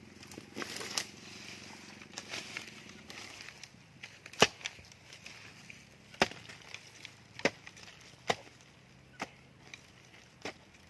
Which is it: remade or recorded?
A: recorded